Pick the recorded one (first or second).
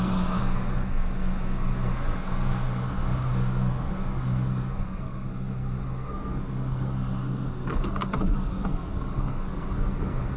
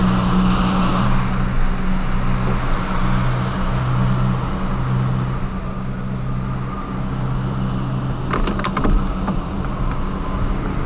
second